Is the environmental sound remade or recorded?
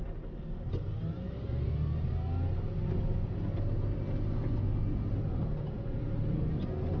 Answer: recorded